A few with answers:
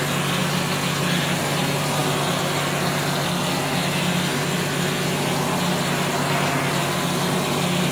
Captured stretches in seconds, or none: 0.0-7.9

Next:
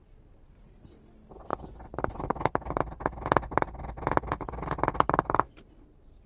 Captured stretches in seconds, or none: 0.0-6.3